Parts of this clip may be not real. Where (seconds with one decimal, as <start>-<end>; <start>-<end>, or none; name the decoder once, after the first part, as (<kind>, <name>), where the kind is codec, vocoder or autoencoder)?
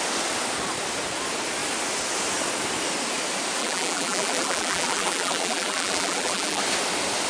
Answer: 3.6-6.6 (vocoder, BigVGAN v2)